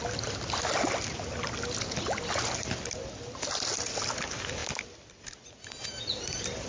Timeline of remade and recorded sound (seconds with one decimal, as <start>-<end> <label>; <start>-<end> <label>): 0.0-6.7 recorded